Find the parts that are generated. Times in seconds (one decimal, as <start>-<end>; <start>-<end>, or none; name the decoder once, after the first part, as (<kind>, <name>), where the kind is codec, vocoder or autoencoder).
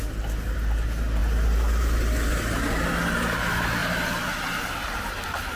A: none